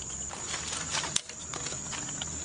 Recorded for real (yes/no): yes